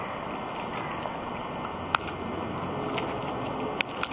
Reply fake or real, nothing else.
real